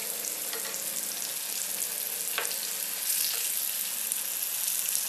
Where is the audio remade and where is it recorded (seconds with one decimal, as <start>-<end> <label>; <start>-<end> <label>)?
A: 0.0-5.1 recorded

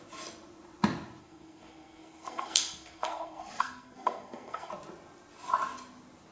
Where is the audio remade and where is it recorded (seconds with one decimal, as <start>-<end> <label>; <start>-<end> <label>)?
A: 0.0-1.2 recorded; 1.2-4.7 remade; 4.7-6.3 recorded

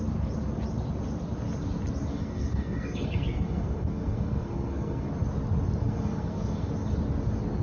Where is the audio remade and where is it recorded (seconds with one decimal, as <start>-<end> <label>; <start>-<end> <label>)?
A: 0.0-2.1 recorded; 2.1-5.1 remade; 5.1-5.8 recorded; 5.8-6.7 remade; 6.7-7.6 recorded

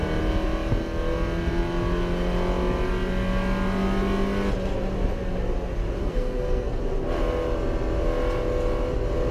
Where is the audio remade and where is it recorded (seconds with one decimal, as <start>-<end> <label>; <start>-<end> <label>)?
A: 0.0-6.0 recorded; 6.0-6.8 remade; 6.8-9.3 recorded

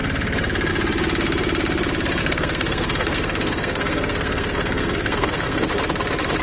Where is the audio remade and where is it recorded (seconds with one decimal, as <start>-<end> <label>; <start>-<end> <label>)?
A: 0.0-2.2 recorded; 2.2-5.7 remade; 5.7-6.4 recorded